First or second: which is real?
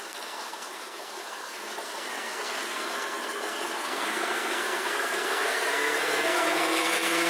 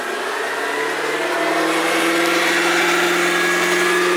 second